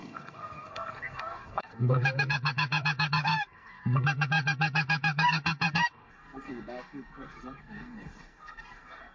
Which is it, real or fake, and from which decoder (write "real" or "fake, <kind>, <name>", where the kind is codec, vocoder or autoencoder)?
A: fake, codec, SNAC